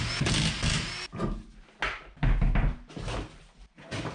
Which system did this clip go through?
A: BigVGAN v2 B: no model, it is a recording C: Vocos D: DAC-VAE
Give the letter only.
B